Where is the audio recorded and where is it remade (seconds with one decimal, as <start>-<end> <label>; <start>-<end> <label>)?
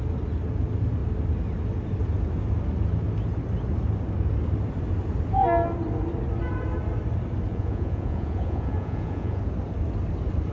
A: 0.0-7.5 recorded; 7.5-9.4 remade; 9.4-10.5 recorded